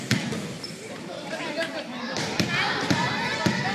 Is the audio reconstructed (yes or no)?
yes